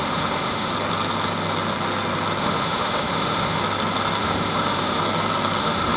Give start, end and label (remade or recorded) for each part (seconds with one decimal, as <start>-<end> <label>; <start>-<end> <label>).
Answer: 0.0-0.7 remade; 0.7-2.4 recorded; 2.4-3.6 remade; 3.6-4.2 recorded; 4.2-5.0 remade; 5.0-5.6 recorded; 5.6-6.0 remade